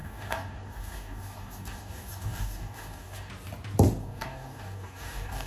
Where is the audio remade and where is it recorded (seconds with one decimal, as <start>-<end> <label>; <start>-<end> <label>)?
0.0-3.3 remade; 3.3-4.0 recorded; 4.0-5.5 remade